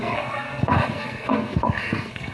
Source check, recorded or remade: remade